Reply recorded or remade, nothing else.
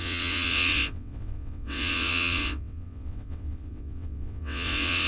remade